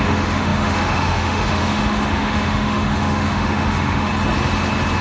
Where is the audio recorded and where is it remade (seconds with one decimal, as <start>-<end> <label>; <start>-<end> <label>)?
0.0-4.1 remade; 4.1-5.0 recorded